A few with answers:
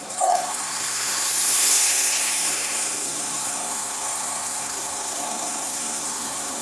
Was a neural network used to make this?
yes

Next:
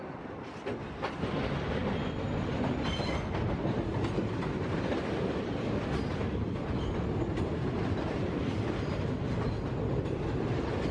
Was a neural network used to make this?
no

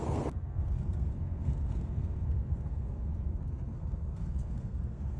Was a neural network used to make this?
yes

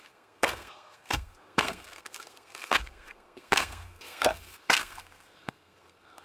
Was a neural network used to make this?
yes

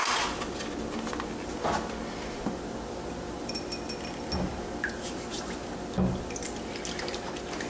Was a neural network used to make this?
no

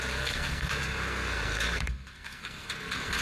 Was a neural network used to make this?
yes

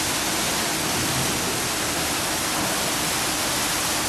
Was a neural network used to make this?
no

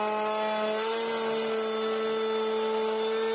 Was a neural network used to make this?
no